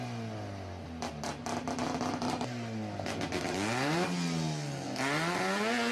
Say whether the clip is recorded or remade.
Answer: recorded